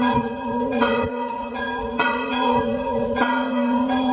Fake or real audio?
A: fake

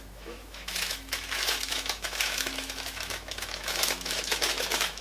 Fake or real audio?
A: fake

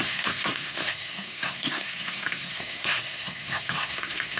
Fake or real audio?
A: fake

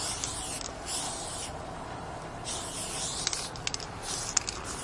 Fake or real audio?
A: real